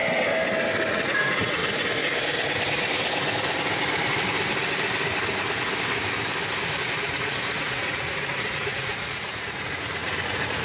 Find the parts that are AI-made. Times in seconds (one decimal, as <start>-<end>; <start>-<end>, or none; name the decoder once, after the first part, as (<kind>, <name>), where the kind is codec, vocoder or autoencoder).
0.9-1.6 (vocoder, Vocos); 6.8-10.6